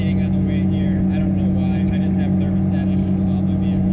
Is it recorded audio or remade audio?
recorded